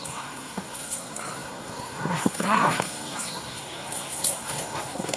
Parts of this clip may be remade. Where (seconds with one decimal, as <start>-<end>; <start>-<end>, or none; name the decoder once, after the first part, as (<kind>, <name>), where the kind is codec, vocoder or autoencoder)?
0.0-5.2 (codec, SNAC)

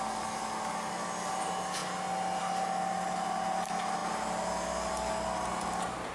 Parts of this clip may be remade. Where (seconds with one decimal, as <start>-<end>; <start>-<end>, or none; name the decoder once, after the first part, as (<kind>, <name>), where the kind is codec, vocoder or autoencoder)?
none